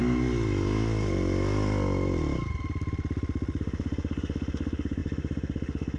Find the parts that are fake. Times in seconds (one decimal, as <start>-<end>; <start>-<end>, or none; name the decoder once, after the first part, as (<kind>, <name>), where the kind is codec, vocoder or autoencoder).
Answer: 3.6-6.0 (autoencoder, DAC-VAE)